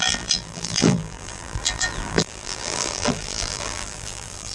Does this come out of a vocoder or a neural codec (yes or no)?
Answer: yes